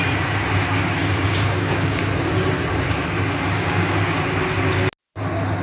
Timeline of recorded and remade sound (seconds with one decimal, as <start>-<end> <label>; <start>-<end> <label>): 0.0-1.0 recorded; 1.0-2.0 remade; 2.0-3.6 recorded; 3.6-4.2 remade; 4.2-5.6 recorded